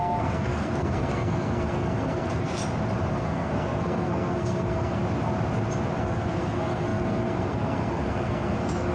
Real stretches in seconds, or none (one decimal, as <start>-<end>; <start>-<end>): 2.6-3.1; 5.0-6.0

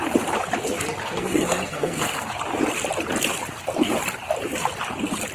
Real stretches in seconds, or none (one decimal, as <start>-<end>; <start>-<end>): 0.0-1.0; 2.3-5.3

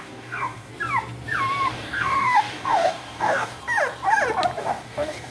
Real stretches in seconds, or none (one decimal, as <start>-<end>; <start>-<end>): 0.7-1.7; 3.6-4.6

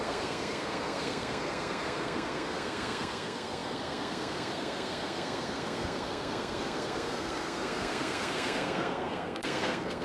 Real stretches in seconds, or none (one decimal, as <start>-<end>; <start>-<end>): none